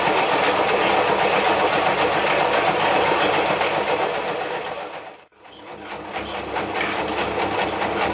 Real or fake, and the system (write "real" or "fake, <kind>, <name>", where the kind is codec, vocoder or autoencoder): real